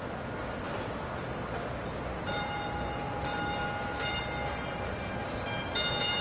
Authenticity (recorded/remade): recorded